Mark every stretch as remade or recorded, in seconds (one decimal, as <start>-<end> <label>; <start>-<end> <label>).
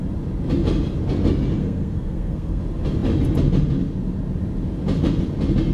0.0-1.6 recorded; 1.6-2.6 remade; 2.6-5.7 recorded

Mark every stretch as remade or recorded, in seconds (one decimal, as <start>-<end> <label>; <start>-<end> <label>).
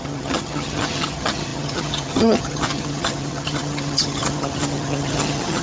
0.0-5.6 remade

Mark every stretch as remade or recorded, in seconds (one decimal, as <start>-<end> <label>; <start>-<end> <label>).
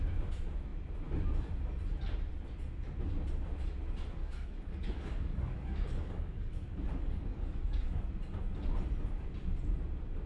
0.0-4.2 recorded; 4.2-8.0 remade; 8.0-10.3 recorded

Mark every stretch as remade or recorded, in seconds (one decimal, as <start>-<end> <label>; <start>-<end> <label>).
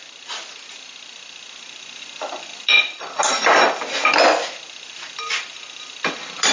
0.0-6.5 recorded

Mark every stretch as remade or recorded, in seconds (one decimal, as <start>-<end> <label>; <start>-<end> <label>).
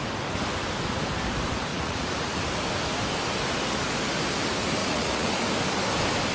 0.0-1.7 recorded; 1.7-2.4 remade; 2.4-4.8 recorded; 4.8-5.4 remade; 5.4-6.3 recorded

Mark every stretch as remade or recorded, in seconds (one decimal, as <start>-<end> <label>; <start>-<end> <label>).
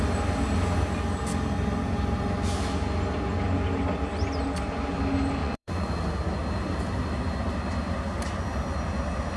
0.0-5.4 recorded; 5.4-6.0 remade; 6.0-9.4 recorded